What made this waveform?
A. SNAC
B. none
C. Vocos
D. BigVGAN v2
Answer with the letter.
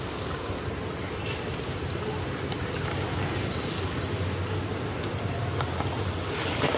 B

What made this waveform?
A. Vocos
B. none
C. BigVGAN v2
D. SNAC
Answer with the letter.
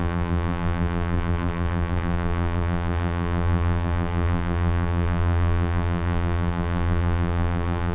C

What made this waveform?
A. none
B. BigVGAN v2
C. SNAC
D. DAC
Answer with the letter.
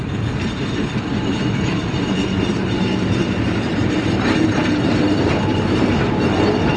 B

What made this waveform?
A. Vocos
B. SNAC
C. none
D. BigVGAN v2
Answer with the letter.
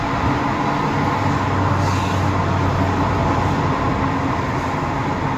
C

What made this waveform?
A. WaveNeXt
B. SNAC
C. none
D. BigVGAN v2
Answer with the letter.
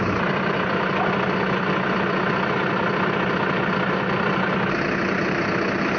C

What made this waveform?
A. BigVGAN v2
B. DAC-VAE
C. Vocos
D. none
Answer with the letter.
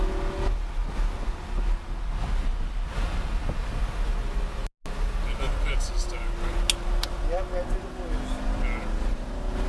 D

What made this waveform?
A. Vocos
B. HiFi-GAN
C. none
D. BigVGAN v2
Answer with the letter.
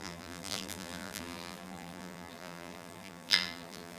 D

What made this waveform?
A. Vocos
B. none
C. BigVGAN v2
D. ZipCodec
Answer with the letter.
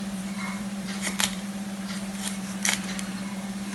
C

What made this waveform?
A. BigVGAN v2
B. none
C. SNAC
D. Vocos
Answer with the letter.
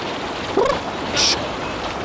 B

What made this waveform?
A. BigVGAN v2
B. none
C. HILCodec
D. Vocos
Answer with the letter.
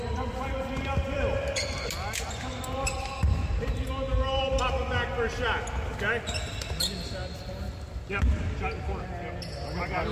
B